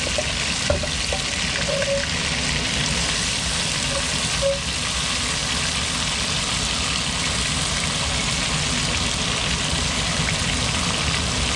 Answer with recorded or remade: recorded